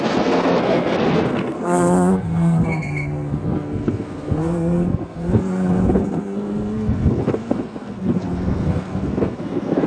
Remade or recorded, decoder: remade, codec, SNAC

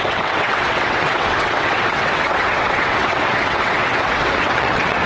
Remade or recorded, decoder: remade, vocoder, WaveNeXt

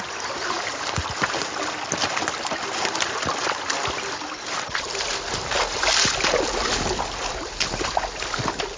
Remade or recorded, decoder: recorded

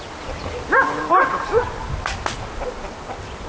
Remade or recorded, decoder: recorded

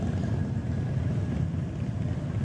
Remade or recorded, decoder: recorded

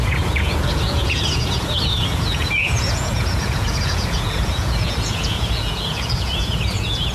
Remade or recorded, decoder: remade, vocoder, Vocos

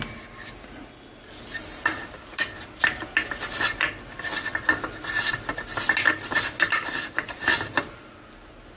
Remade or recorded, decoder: recorded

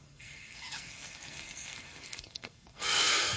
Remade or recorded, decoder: remade, codec, SNAC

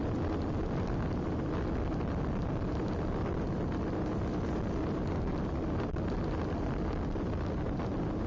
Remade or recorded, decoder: recorded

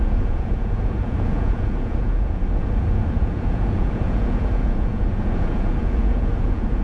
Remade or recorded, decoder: remade, vocoder, Vocos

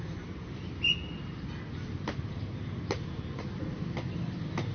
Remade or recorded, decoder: recorded